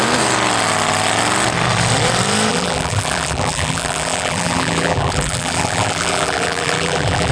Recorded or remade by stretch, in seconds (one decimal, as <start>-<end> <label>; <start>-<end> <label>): 0.0-2.5 recorded; 2.5-7.3 remade